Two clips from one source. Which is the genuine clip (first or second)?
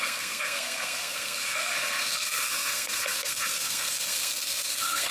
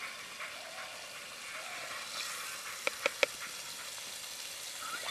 second